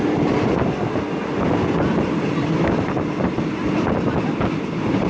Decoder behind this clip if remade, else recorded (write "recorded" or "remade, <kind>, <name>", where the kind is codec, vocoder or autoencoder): recorded